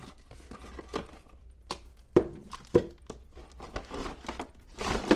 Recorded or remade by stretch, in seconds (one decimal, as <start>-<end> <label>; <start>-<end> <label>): 0.0-5.2 recorded